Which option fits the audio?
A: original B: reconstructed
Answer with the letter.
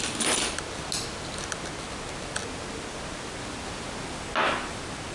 A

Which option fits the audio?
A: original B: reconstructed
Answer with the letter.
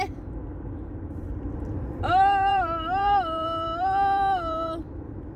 B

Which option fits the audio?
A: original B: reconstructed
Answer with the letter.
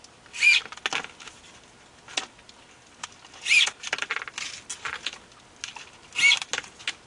A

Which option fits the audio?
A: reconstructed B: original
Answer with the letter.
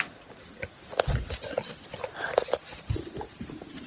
B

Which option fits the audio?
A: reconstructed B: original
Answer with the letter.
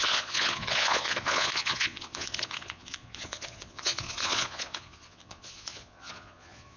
A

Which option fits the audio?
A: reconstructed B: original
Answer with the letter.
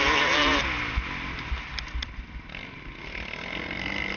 B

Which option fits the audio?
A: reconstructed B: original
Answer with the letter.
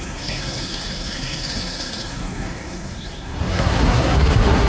A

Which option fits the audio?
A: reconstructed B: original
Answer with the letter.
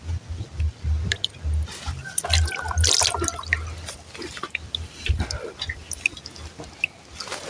B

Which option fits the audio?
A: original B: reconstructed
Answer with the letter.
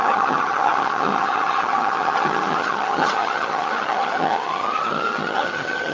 B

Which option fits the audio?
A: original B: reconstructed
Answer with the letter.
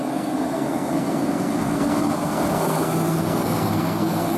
B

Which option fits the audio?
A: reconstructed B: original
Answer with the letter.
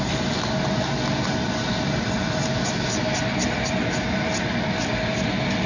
B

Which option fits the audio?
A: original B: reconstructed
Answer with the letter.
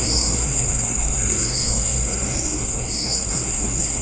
B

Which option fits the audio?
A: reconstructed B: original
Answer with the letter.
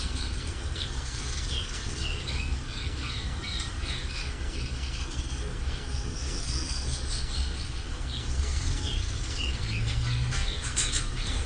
A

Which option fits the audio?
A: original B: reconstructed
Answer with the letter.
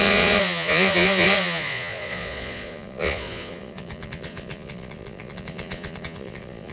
B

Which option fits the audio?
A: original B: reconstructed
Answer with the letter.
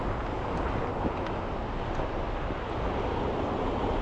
A